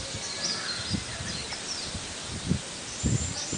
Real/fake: real